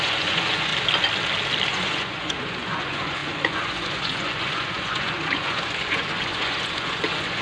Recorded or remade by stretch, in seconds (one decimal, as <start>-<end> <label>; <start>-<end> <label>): 0.0-0.7 remade; 0.7-1.7 recorded; 1.7-7.4 remade